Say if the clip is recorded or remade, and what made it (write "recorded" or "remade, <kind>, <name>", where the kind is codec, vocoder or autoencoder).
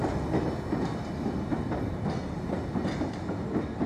recorded